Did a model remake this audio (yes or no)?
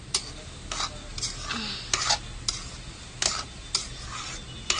no